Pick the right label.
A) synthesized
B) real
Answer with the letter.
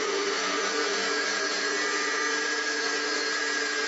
A